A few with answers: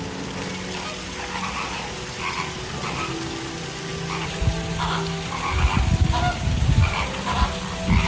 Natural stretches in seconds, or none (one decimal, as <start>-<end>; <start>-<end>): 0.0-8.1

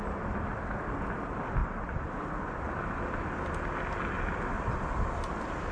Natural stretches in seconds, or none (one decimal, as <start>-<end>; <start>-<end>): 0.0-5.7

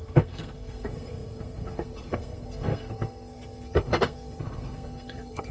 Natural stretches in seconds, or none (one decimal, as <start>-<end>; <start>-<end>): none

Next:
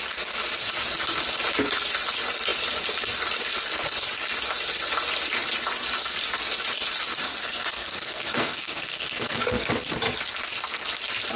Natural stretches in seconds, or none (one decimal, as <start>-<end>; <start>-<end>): 0.0-7.3; 9.7-11.4

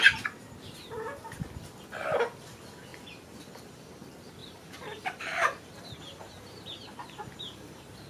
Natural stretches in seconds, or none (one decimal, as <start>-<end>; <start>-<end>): 0.0-4.4

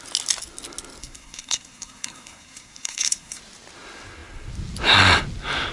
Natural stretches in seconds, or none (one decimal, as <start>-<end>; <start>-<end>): 0.0-1.0; 3.4-5.7